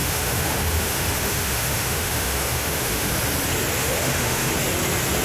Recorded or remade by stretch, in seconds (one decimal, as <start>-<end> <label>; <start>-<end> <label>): 0.0-3.1 remade; 3.1-3.8 recorded; 3.8-4.5 remade; 4.5-5.2 recorded

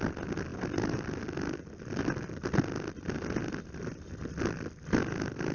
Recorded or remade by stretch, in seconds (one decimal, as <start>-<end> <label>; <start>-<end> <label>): 0.0-5.5 recorded